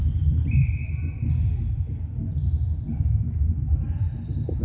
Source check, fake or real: real